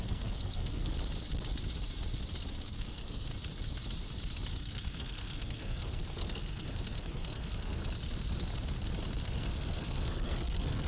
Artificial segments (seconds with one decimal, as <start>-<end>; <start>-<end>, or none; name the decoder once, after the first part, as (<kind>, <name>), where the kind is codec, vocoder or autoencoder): 0.0-0.9 (codec, SNAC); 2.5-3.3; 4.5-7.8; 9.2-10.9